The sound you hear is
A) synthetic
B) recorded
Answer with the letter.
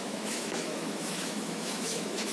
A